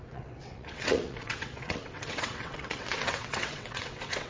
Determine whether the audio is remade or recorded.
remade